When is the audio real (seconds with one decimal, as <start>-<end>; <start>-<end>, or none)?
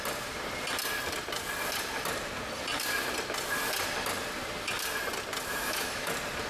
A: 0.0-5.5; 6.1-6.5